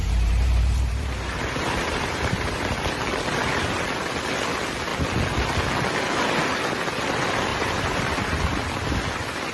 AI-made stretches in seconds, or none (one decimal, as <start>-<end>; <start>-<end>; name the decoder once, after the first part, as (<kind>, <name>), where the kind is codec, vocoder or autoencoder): 0.0-2.6 (vocoder, BigVGAN v2); 7.5-8.0